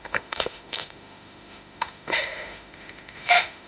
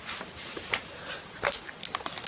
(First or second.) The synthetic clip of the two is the first